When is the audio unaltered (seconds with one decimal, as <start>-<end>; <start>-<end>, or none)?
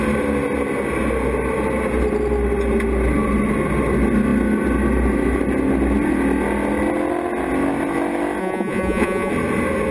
0.0-8.4; 9.3-9.9